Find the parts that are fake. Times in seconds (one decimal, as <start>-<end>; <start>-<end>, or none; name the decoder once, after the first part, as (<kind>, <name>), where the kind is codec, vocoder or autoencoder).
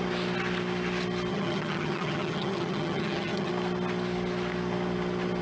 1.3-3.5 (vocoder, HiFi-GAN)